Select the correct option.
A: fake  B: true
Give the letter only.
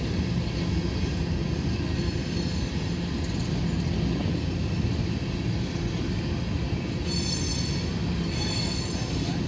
B